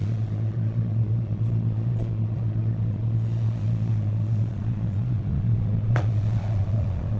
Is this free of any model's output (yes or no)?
no